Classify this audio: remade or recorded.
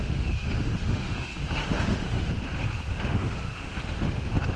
remade